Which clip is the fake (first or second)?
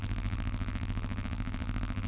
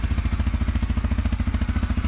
first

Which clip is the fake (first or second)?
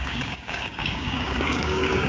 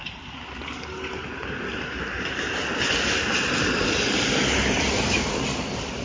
first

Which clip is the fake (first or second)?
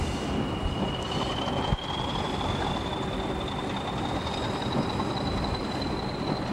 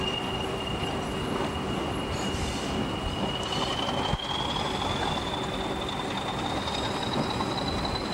first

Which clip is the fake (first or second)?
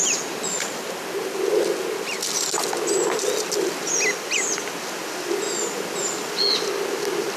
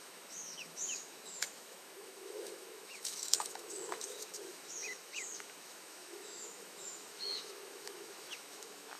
second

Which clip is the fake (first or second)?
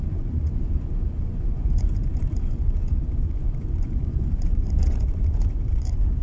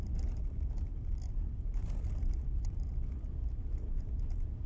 first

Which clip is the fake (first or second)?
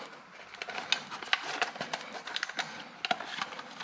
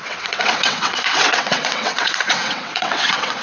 second